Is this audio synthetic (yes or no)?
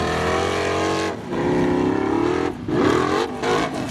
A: no